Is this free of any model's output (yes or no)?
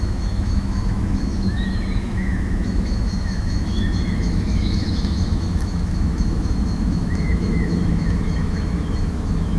no